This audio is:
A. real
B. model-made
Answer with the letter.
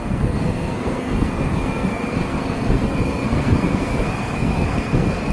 B